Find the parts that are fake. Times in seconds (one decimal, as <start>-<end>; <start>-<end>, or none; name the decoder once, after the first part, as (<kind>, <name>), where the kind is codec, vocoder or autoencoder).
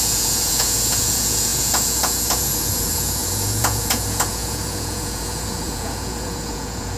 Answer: 0.0-7.0 (vocoder, Vocos)